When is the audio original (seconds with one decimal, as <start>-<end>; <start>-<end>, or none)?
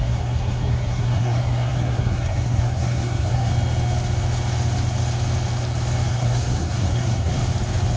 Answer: 3.5-6.1; 7.3-8.0